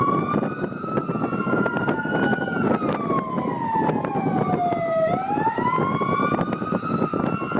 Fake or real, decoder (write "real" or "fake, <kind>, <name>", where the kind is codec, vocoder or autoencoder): real